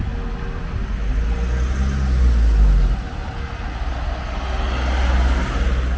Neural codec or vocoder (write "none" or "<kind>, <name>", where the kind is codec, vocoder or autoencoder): none